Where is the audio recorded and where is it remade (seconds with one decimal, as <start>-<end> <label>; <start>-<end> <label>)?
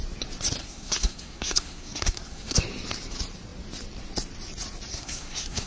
0.0-0.6 recorded; 0.6-2.6 remade; 2.6-4.9 recorded; 4.9-5.7 remade